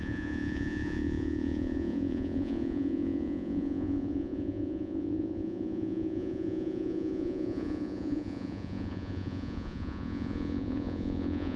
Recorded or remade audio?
remade